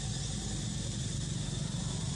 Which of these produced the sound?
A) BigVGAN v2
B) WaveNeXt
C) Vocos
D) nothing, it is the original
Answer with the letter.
A